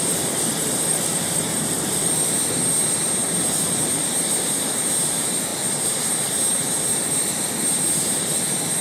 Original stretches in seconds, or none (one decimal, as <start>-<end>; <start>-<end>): 0.0-0.5; 2.1-8.8